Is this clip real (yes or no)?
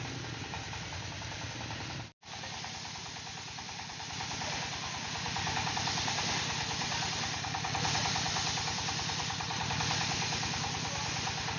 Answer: no